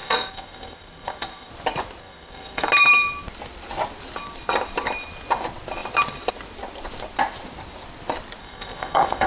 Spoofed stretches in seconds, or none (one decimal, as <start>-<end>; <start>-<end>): 0.0-1.5; 2.0-2.7; 8.4-9.3